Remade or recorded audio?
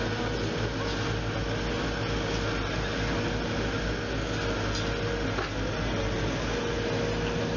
recorded